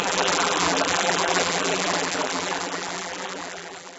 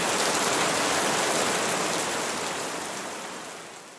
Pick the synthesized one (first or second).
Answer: first